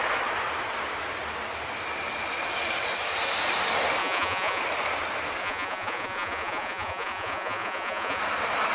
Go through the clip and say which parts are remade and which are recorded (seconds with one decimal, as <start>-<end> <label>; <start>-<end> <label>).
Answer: 0.0-4.0 recorded; 4.0-4.6 remade; 4.6-5.4 recorded; 5.4-8.2 remade; 8.2-8.7 recorded